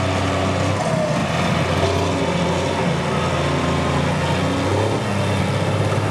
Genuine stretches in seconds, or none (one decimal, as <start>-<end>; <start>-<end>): 0.0-6.1